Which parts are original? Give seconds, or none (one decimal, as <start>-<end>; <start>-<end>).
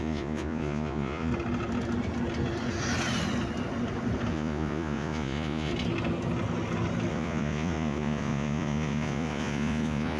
1.3-4.3; 5.7-7.1